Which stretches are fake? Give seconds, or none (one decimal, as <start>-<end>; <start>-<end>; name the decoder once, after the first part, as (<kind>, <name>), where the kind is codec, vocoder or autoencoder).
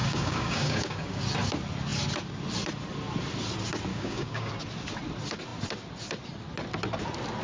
0.0-1.2 (codec, DAC); 3.9-4.5